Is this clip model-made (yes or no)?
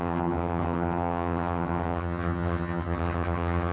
yes